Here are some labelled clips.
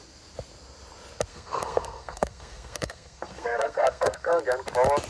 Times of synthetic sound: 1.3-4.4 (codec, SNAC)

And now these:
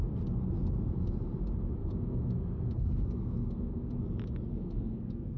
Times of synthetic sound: 1.8-4.0 (codec, SNAC); 4.5-5.4

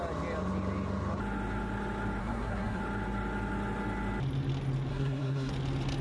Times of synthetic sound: 2.2-2.8 (codec, SNAC); 4.9-5.5

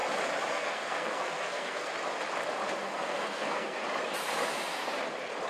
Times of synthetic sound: 0.5-1.9 (codec, SNAC); 2.8-3.8

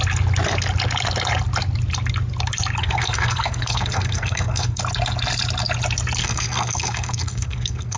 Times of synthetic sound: 2.8-4.8 (codec, SNAC); 6.2-8.0